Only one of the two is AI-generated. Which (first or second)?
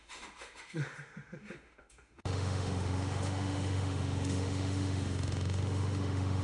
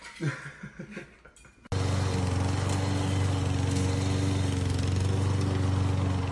first